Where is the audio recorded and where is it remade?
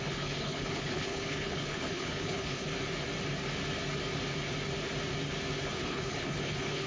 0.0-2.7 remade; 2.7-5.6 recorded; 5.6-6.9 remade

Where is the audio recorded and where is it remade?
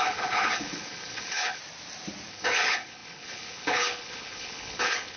0.0-1.6 remade; 1.6-2.3 recorded; 2.3-5.2 remade